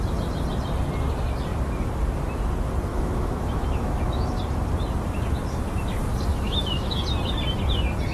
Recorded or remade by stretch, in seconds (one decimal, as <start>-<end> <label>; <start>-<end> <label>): 0.0-2.9 recorded; 2.9-4.4 remade; 4.4-6.3 recorded; 6.3-7.0 remade; 7.0-8.1 recorded